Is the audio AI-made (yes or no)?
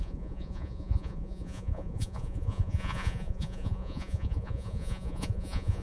yes